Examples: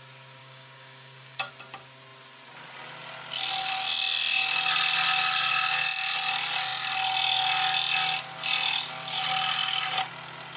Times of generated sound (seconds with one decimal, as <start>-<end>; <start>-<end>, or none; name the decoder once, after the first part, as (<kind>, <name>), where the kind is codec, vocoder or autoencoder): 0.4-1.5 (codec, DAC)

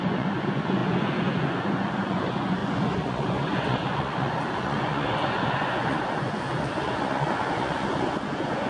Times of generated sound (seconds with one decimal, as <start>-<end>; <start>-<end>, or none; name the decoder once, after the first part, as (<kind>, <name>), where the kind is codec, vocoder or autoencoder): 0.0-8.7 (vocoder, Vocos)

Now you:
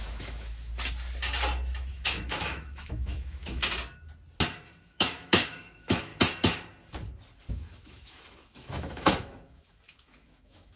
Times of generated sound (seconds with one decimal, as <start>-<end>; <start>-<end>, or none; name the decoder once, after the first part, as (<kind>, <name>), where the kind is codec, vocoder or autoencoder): 0.0-0.7 (autoencoder, DAC-VAE); 1.9-3.6; 4.8-6.1; 7.5-10.8